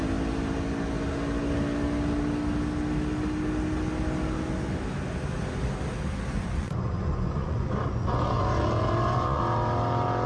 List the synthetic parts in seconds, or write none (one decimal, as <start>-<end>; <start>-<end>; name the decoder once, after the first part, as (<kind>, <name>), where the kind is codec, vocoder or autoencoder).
6.3-9.4 (vocoder, Vocos)